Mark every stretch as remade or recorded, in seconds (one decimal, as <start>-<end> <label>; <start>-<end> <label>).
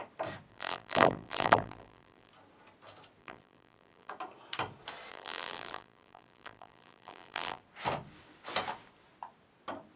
0.0-0.5 recorded; 0.5-2.3 remade; 2.3-3.2 recorded; 3.2-4.1 remade; 4.1-5.1 recorded; 5.1-7.6 remade; 7.6-10.0 recorded